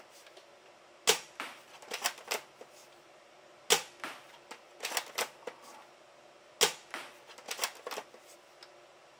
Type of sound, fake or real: real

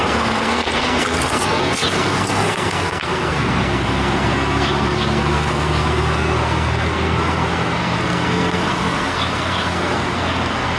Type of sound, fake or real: fake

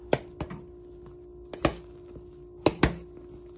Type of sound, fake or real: real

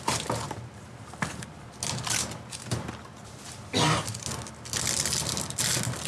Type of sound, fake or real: real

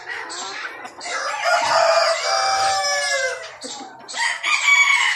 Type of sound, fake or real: real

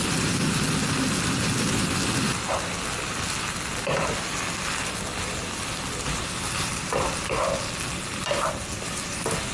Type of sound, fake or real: real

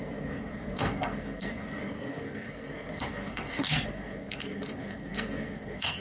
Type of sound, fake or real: fake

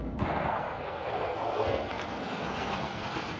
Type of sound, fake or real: fake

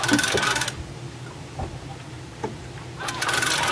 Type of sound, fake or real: real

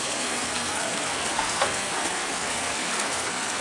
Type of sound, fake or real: fake